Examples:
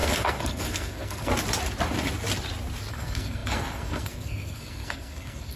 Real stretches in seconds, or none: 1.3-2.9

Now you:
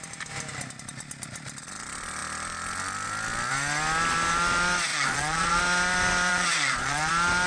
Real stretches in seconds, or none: 0.0-4.9; 5.6-6.3; 7.1-7.5

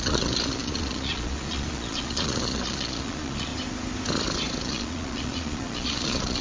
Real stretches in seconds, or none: 3.5-4.6